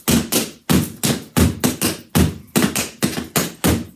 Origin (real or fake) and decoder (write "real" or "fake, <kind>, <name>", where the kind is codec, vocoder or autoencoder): real